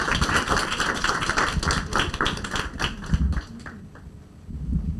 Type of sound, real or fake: real